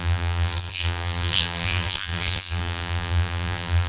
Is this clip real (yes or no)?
no